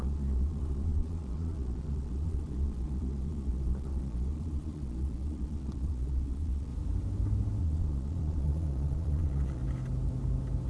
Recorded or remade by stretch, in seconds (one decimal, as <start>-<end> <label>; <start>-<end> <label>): 0.0-6.7 remade; 6.7-7.6 recorded; 7.6-9.6 remade; 9.6-10.7 recorded

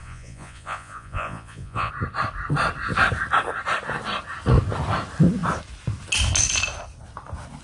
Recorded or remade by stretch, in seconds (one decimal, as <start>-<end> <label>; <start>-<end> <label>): 0.0-1.9 remade; 1.9-7.6 recorded

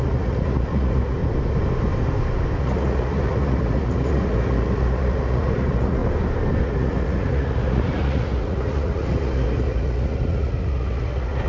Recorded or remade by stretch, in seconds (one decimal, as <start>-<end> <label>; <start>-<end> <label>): 0.0-1.2 remade; 1.2-2.6 recorded; 2.6-6.0 remade; 6.0-6.6 recorded; 6.6-11.5 remade

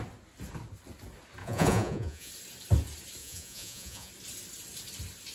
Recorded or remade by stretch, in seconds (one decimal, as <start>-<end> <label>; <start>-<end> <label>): 0.0-1.4 recorded; 1.4-2.3 remade; 2.3-3.2 recorded; 3.2-4.1 remade; 4.1-5.3 recorded

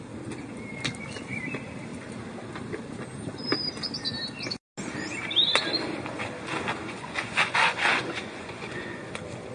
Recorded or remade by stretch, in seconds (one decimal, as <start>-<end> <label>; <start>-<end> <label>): 0.0-6.8 recorded; 6.8-9.1 remade; 9.1-9.5 recorded